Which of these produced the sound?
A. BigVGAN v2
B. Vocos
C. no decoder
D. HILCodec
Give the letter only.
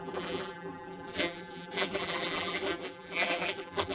A